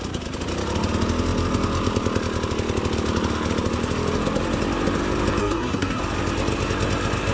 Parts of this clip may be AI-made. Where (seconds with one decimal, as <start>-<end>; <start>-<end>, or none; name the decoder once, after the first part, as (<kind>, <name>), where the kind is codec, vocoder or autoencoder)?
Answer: 5.4-6.0 (codec, SNAC)